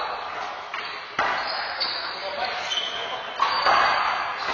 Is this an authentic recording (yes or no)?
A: yes